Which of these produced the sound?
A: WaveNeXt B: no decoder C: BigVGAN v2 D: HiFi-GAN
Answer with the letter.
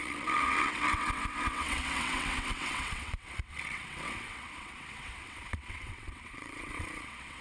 A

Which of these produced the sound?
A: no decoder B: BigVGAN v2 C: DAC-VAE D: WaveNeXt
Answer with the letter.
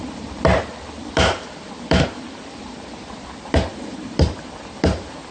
B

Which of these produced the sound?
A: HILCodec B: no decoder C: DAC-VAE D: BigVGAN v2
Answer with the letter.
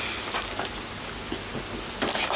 B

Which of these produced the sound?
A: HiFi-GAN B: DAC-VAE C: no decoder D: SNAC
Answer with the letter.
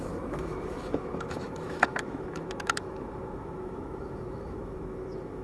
B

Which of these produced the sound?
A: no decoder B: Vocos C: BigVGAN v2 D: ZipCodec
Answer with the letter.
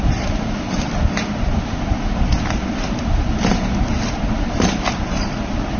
A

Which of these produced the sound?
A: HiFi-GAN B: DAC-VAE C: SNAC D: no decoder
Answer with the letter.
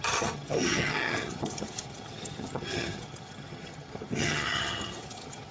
A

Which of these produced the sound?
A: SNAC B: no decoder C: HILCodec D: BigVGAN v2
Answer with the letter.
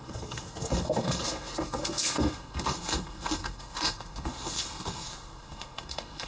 A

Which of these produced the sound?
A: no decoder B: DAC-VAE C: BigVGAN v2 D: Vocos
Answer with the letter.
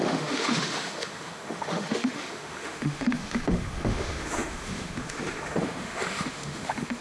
B